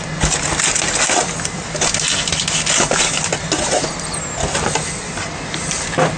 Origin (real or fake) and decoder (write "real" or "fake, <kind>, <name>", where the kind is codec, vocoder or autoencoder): real